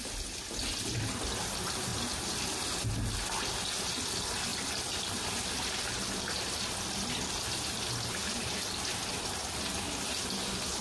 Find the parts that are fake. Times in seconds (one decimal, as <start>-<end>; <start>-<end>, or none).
none